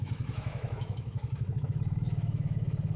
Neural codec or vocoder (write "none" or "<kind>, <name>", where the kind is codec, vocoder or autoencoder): autoencoder, DAC-VAE